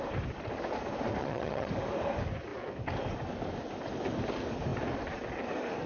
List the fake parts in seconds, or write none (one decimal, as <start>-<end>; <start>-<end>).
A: 1.2-1.7